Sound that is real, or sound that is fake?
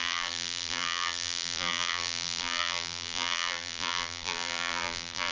fake